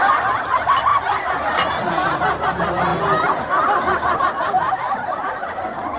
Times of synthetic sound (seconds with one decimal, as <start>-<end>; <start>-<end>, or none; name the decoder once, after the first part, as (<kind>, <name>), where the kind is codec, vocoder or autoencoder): 0.9-1.7 (vocoder, BigVGAN v2)